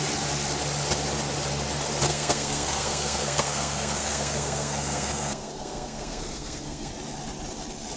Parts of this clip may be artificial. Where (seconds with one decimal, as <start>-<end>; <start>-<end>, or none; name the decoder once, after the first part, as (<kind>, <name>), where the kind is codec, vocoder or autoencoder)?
2.1-6.9 (codec, SNAC)